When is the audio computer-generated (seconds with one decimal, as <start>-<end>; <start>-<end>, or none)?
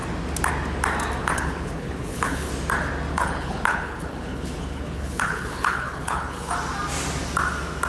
1.2-2.5; 3.1-6.5